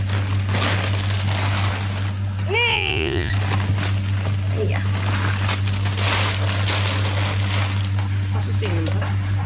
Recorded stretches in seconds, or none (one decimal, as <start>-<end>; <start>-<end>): 0.0-2.7; 3.3-9.5